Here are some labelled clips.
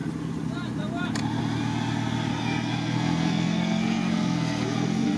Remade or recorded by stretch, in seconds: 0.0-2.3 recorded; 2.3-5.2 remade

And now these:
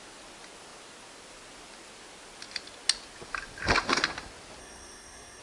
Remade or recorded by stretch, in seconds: 0.0-4.6 recorded; 4.6-5.4 remade

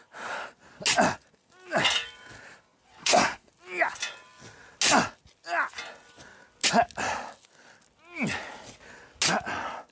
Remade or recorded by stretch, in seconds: 0.0-3.0 recorded; 3.0-3.5 remade; 3.5-9.9 recorded

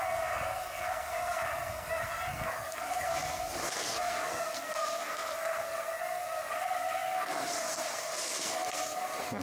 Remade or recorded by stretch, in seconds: 0.0-9.4 remade

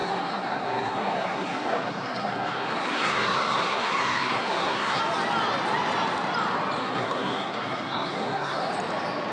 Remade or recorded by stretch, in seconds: 0.0-5.0 remade; 5.0-6.8 recorded; 6.8-8.7 remade; 8.7-9.3 recorded

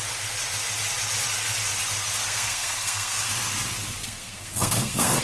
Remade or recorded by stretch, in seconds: 0.0-2.2 recorded; 2.2-3.3 remade; 3.3-4.0 recorded; 4.0-5.2 remade

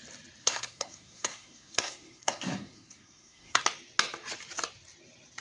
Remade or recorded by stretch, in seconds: 0.0-0.4 recorded; 0.4-3.6 remade; 3.6-5.4 recorded